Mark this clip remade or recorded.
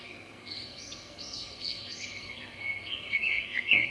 remade